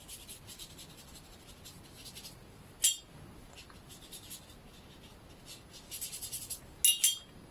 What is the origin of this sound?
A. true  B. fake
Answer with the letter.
A